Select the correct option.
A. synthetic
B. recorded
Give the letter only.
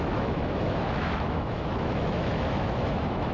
A